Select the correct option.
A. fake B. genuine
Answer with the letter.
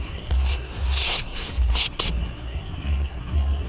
A